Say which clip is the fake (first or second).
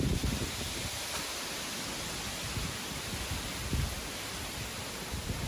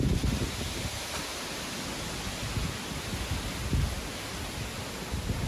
first